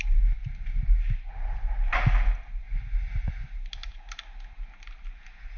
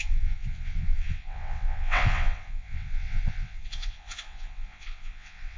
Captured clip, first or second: first